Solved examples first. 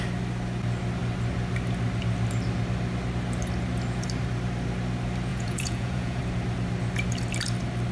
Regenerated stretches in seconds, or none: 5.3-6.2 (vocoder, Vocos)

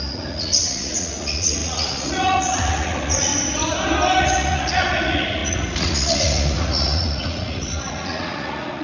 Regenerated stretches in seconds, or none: 0.0-3.3 (vocoder, Vocos); 4.2-8.8

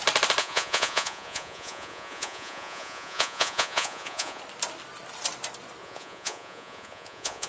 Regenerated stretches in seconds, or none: 0.4-4.4 (vocoder, Vocos); 5.8-7.5

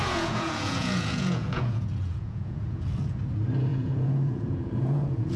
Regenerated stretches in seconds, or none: 0.0-3.2 (vocoder, Vocos); 3.7-5.4